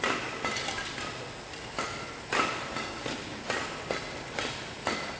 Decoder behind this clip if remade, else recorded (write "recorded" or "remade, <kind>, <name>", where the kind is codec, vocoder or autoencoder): recorded